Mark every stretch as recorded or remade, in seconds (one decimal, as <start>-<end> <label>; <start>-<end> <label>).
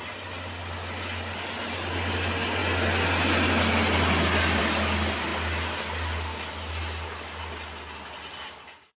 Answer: 0.0-9.0 recorded